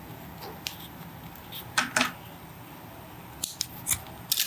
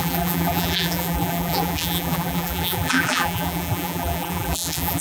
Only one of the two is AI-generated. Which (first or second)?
second